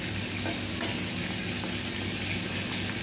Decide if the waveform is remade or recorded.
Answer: recorded